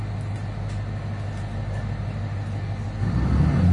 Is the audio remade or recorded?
recorded